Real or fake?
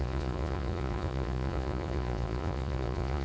fake